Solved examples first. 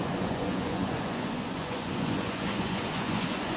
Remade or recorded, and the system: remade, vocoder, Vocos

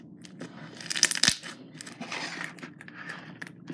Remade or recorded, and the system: recorded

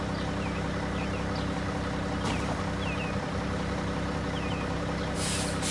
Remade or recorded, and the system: recorded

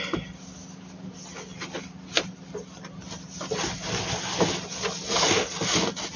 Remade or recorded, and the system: recorded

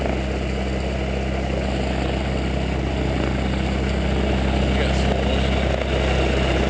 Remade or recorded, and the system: recorded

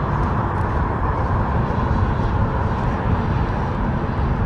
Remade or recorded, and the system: recorded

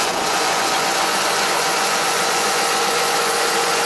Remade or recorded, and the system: remade, vocoder, Vocos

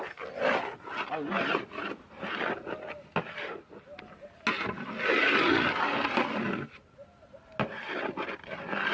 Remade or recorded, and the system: recorded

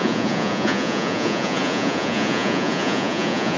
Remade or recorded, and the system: remade, vocoder, Vocos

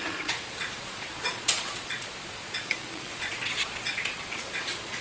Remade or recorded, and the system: remade, vocoder, Vocos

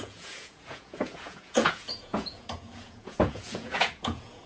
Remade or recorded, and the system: remade, vocoder, Vocos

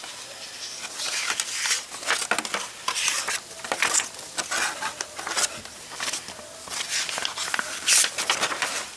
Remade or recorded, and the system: recorded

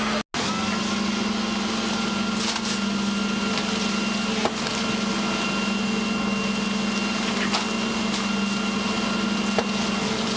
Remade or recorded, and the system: recorded